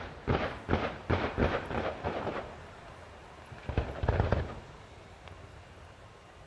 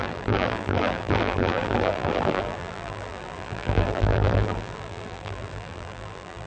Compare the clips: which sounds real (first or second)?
first